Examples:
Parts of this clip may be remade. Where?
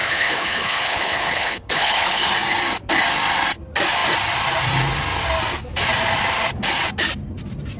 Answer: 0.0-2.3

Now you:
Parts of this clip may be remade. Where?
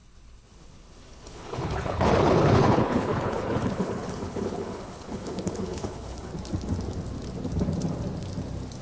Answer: 0.0-6.3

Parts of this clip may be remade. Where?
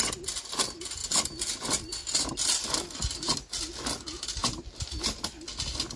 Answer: none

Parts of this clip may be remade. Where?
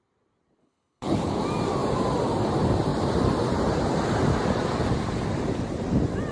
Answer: 0.6-1.4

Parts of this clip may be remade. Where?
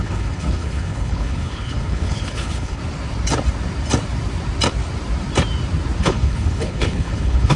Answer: 0.0-2.8; 6.0-7.6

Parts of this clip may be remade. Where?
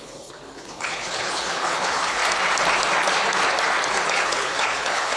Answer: 0.0-2.2; 4.1-5.2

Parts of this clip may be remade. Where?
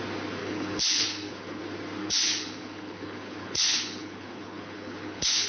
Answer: 0.4-1.6; 2.0-5.5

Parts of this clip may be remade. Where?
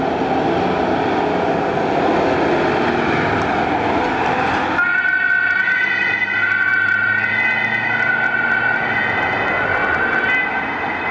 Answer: none